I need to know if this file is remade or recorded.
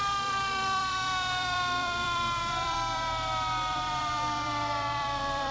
remade